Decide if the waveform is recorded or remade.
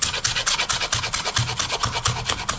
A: recorded